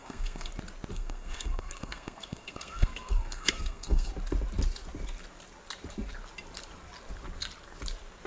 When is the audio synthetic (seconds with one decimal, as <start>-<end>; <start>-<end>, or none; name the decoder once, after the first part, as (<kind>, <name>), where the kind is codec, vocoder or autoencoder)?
0.0-0.5 (codec, SNAC); 0.9-4.1